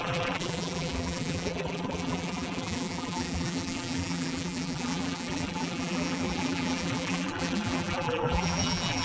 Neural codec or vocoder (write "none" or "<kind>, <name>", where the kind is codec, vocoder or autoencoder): vocoder, BigVGAN v2